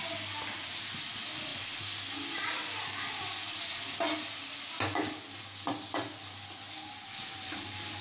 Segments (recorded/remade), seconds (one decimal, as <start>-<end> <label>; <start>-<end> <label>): 0.0-8.0 recorded